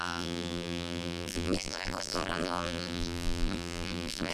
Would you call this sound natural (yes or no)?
no